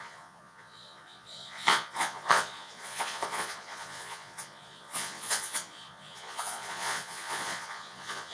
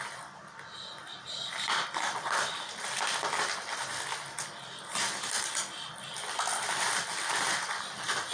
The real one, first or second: second